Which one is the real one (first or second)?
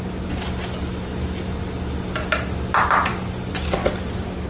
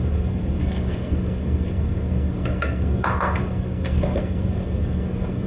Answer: first